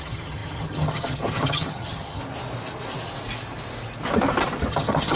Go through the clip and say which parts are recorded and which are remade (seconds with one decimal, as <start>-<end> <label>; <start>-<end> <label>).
0.0-2.2 remade; 2.2-4.7 recorded; 4.7-5.2 remade